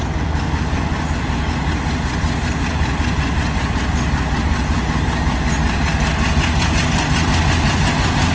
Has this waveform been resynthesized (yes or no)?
no